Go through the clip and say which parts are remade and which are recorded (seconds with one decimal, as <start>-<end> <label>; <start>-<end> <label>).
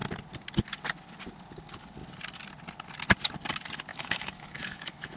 0.0-3.9 recorded; 3.9-5.2 remade